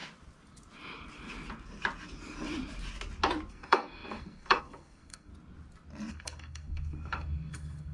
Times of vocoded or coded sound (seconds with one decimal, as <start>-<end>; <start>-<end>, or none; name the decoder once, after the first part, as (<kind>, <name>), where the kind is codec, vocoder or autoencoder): 3.5-5.3 (codec, SNAC); 6.1-7.9